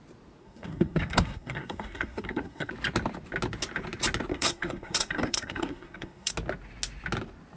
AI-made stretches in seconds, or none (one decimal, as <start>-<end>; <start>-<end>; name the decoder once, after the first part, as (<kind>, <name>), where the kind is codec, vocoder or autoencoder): 0.4-2.7 (codec, SNAC); 4.3-6.3